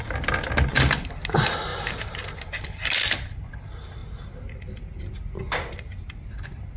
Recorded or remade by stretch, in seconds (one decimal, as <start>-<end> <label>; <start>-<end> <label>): 0.0-1.7 recorded; 1.7-2.6 remade; 2.6-6.8 recorded